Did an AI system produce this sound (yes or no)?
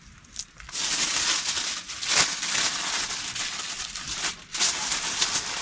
no